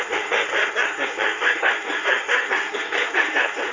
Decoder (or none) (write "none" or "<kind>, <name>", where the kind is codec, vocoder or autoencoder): codec, SNAC